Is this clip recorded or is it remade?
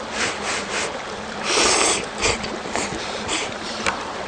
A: recorded